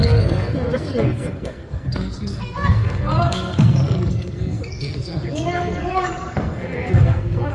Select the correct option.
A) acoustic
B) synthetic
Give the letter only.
B